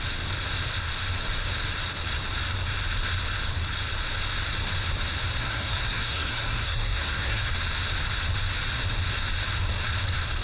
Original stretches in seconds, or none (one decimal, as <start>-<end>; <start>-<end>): 0.0-5.4; 7.4-10.4